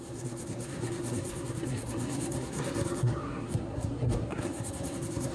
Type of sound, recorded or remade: remade